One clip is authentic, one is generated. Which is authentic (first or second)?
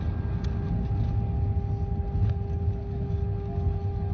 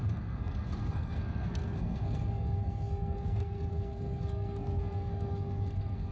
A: first